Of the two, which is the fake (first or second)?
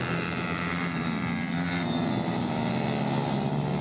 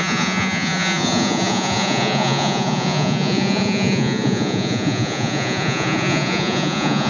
second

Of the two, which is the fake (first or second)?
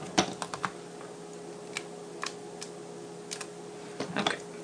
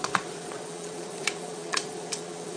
second